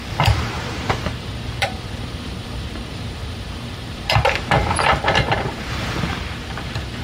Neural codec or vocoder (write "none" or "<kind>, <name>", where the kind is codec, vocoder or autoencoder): vocoder, BigVGAN v2